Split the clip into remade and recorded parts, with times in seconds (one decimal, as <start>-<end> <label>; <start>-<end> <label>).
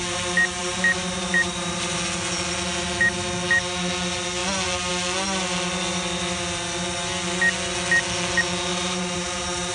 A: 0.0-0.6 recorded; 0.6-2.0 remade; 2.0-8.7 recorded; 8.7-9.7 remade